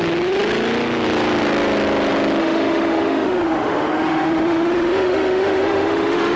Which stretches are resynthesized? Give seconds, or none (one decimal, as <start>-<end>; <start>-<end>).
2.4-6.4